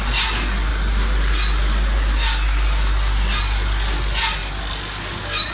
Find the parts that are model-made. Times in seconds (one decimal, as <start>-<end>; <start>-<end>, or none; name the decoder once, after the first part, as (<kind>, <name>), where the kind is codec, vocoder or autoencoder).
none